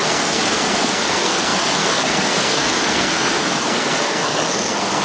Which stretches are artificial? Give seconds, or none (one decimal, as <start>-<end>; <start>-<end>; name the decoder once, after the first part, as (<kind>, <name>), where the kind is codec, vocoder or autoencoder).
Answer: 0.0-5.0 (codec, SNAC)